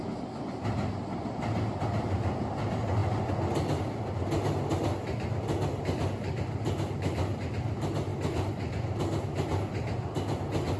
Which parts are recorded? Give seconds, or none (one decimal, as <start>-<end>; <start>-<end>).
0.0-10.8